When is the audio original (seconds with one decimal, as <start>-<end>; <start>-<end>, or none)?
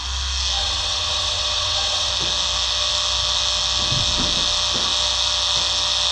0.0-0.6; 2.1-6.1